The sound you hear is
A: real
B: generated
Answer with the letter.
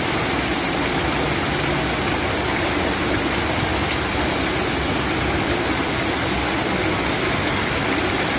A